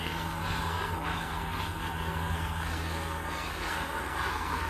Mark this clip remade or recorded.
remade